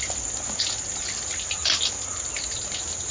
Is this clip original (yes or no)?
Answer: yes